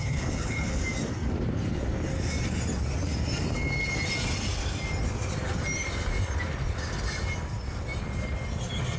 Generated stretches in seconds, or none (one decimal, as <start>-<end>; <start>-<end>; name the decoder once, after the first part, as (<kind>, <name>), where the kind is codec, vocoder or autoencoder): 0.0-0.7 (codec, HILCodec)